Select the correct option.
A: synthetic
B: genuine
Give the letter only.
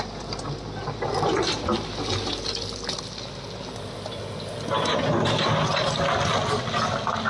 B